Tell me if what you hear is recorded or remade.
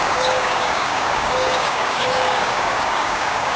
remade